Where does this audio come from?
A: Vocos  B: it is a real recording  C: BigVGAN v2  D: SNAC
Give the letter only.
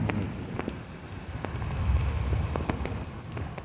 B